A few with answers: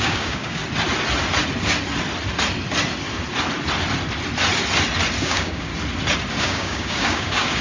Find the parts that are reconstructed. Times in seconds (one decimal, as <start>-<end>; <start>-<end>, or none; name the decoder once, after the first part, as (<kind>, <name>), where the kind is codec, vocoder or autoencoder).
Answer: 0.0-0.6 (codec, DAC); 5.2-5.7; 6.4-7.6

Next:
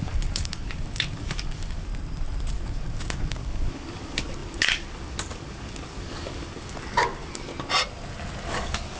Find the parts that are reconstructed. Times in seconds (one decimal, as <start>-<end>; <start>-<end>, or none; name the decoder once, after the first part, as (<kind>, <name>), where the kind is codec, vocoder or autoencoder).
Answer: 0.0-1.9 (codec, DAC); 2.5-7.5; 8.5-9.0

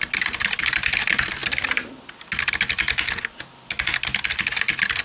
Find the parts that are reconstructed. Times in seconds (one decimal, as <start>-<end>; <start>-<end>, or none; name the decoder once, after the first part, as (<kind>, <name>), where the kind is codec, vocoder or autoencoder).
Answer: none

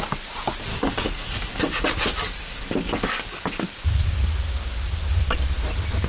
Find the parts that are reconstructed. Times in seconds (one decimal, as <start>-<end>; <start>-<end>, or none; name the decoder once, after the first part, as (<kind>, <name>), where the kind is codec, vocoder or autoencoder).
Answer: 0.7-3.6 (codec, DAC)